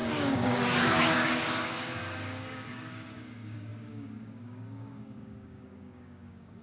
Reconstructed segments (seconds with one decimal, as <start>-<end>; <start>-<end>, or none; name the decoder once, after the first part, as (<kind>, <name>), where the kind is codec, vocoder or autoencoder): 0.0-6.6 (codec, DAC)